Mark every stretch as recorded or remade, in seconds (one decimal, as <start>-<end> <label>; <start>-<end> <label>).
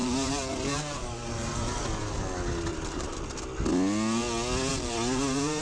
0.0-2.2 remade; 2.2-2.7 recorded; 2.7-3.3 remade; 3.3-4.7 recorded; 4.7-5.6 remade